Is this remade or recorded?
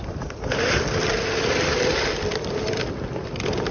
recorded